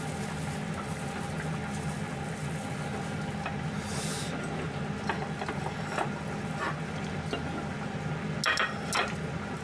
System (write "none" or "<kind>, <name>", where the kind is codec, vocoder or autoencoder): none